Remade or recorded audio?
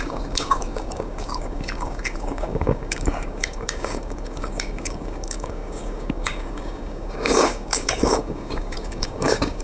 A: remade